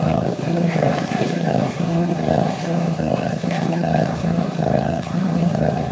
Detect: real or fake fake